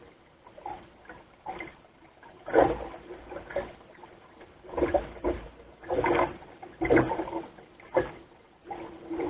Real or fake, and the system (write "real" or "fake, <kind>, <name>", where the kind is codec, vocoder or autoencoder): real